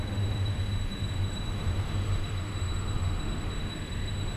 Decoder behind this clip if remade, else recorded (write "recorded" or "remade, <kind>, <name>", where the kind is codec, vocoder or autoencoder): remade, autoencoder, DAC-VAE